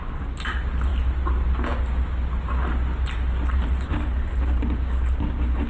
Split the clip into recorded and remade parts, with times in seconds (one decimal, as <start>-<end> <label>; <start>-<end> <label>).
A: 0.0-5.7 recorded